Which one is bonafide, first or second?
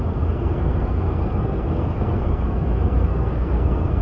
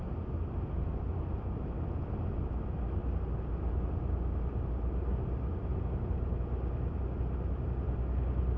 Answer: second